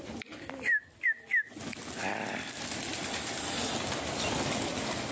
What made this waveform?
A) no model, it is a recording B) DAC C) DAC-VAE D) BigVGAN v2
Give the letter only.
A